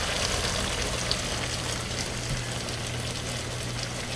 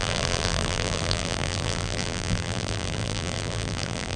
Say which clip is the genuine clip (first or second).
first